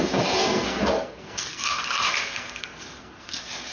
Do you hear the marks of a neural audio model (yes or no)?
yes